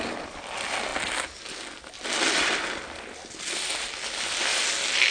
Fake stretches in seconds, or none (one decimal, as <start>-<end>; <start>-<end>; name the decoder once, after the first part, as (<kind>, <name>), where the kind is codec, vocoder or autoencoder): none